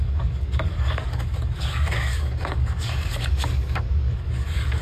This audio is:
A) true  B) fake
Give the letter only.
B